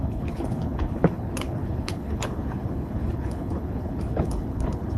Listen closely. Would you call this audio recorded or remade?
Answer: remade